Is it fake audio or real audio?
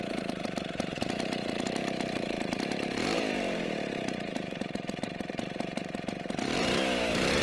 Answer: fake